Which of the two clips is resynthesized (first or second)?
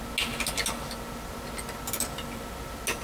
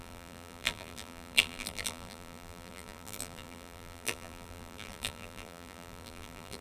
second